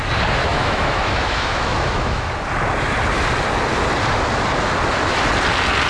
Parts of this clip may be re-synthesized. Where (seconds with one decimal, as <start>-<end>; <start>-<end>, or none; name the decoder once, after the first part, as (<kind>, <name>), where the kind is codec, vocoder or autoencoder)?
0.5-2.3 (autoencoder, DAC-VAE)

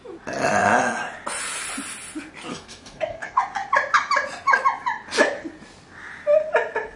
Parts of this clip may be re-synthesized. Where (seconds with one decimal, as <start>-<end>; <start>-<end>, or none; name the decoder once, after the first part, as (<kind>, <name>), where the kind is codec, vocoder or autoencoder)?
2.5-3.4 (codec, DAC)

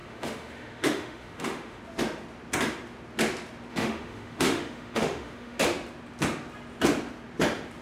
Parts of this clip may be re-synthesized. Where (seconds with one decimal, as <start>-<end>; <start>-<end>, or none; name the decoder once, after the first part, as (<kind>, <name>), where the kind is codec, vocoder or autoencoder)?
0.0-1.8 (autoencoder, DAC-VAE); 3.7-5.6

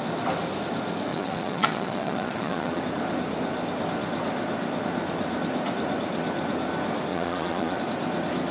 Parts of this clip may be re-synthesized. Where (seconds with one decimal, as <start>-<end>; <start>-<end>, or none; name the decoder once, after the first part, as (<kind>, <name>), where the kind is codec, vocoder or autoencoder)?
1.1-2.8 (vocoder, Vocos); 7.1-7.8

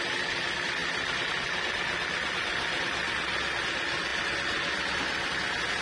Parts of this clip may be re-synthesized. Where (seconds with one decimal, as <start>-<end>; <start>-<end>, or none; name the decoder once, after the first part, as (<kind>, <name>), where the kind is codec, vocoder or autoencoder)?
none

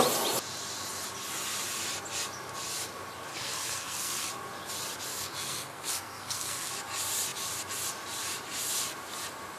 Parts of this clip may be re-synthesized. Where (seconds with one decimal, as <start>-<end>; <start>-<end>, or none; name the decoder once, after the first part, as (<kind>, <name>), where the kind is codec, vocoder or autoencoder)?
3.3-4.3 (codec, SNAC); 5.1-6.7